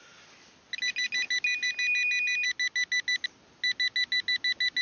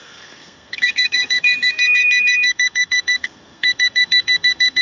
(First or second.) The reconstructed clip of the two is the second